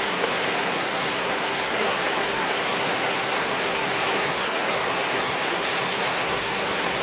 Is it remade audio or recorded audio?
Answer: remade